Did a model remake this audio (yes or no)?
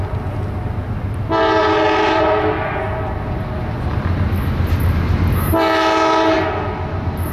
no